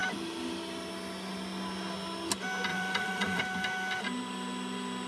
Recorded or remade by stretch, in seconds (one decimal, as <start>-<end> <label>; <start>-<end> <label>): 0.0-2.7 recorded; 2.7-3.4 remade; 3.4-5.1 recorded